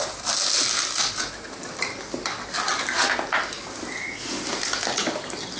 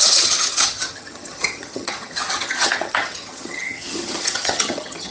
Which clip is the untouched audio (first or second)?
first